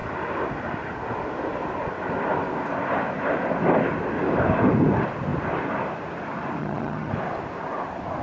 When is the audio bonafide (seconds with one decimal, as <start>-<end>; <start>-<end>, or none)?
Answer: 0.0-6.6; 7.1-8.2